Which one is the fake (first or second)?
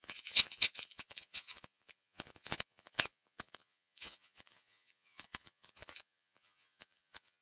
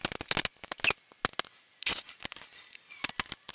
first